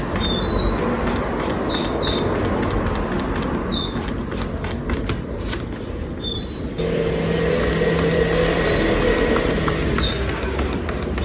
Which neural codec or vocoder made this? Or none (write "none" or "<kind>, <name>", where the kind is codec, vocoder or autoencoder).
none